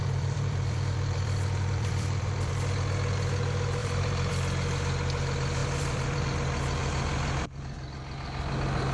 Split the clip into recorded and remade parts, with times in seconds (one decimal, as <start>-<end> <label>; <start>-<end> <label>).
0.0-2.5 remade; 2.5-3.8 recorded; 3.8-4.3 remade; 4.3-5.6 recorded; 5.6-6.2 remade; 6.2-8.9 recorded